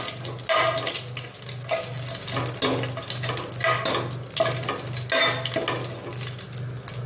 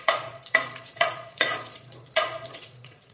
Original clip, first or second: first